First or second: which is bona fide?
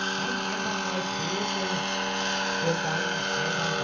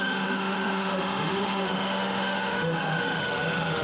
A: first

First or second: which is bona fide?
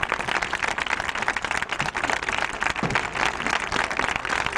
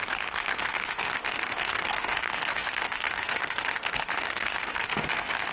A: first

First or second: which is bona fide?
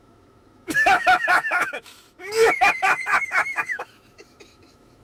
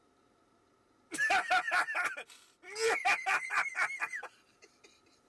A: second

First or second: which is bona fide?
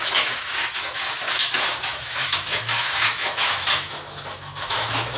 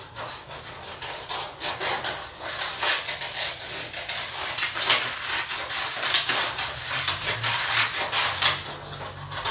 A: second